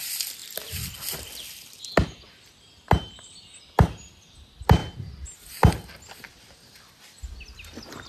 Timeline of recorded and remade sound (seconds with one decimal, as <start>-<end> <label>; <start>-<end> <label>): 0.0-8.1 recorded